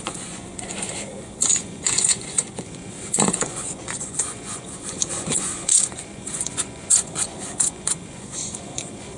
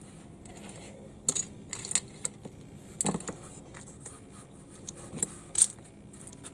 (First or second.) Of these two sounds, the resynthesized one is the first